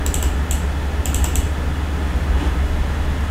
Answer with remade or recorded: recorded